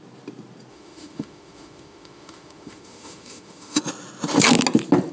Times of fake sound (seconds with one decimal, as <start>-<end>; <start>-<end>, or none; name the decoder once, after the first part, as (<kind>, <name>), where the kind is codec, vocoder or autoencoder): 0.7-3.8 (autoencoder, DAC-VAE)